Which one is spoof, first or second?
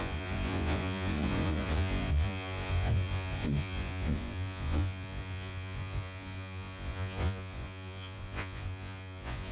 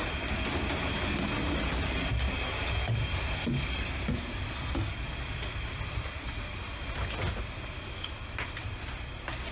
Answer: first